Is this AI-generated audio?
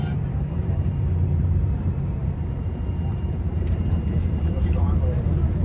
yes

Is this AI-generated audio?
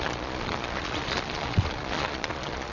yes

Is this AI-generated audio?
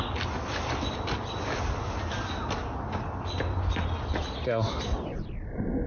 no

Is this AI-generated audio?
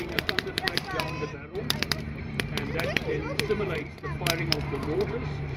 yes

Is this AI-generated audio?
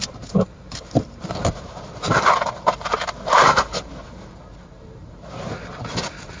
yes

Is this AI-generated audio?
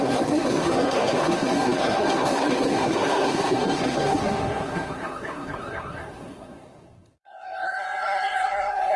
yes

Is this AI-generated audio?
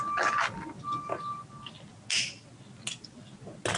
no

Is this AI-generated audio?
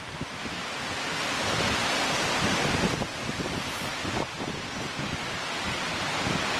no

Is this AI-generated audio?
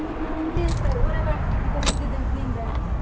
no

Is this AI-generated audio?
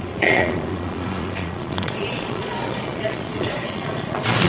yes